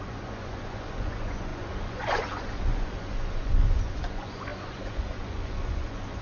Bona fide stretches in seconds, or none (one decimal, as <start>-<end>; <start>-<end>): none